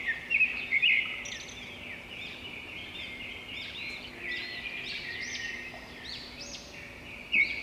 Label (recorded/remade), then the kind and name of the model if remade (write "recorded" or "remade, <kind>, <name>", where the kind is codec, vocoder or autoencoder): recorded